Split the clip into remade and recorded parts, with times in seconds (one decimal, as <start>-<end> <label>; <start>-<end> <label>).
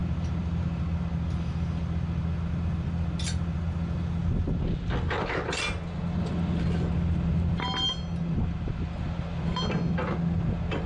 0.0-10.9 recorded